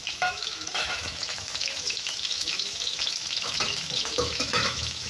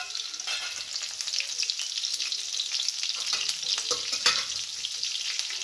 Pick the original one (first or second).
second